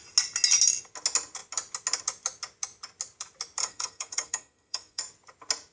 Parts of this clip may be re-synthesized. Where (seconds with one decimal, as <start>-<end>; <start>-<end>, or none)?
3.6-5.0